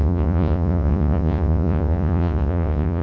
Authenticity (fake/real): fake